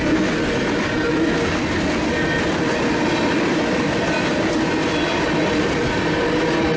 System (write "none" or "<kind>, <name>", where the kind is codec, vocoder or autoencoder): none